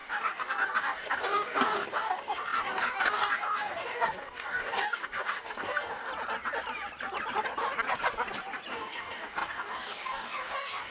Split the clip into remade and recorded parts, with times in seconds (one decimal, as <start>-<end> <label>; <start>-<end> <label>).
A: 0.0-6.1 remade; 6.1-8.7 recorded; 8.7-10.9 remade